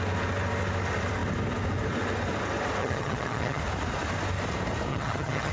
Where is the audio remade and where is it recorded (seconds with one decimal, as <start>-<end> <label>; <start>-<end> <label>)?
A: 0.0-2.8 recorded; 2.8-3.6 remade; 3.6-4.9 recorded; 4.9-5.5 remade